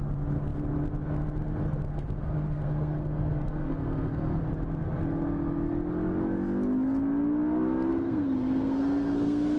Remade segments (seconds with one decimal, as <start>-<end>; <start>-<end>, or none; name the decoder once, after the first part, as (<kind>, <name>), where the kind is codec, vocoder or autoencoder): 1.9-4.4 (codec, SNAC); 7.9-9.6